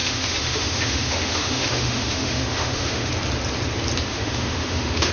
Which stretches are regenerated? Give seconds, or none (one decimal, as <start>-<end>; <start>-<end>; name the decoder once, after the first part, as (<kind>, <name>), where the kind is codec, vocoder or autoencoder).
0.0-3.1 (autoencoder, DAC-VAE); 4.1-5.1